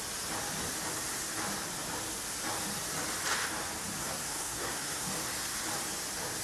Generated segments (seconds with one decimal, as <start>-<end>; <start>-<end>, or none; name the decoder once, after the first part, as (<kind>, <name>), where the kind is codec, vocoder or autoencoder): 4.0-5.1 (codec, SNAC)